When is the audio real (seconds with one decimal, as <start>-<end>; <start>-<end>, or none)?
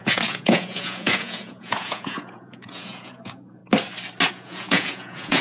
3.6-4.3